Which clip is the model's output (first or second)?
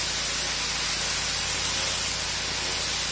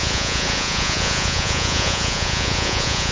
second